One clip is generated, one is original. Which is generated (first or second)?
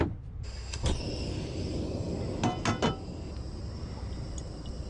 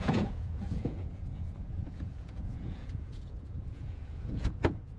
second